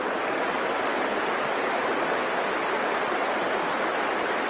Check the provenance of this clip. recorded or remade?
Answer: recorded